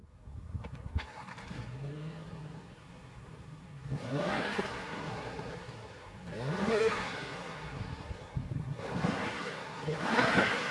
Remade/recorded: remade